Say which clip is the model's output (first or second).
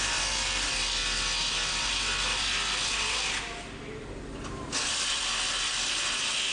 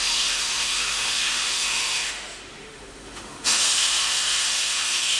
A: second